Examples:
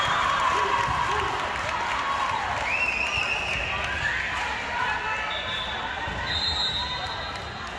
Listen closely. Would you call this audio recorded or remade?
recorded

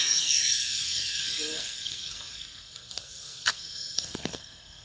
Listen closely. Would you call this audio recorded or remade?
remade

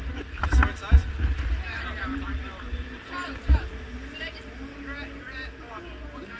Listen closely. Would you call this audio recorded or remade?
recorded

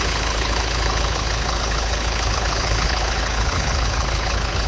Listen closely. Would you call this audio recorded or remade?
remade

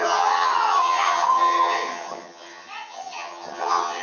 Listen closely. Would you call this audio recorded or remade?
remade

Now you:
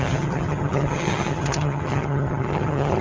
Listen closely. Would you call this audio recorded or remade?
remade